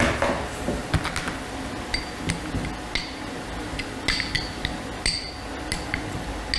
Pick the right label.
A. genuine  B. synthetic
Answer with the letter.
A